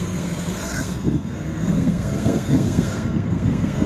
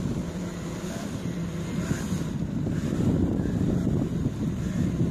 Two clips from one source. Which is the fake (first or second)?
first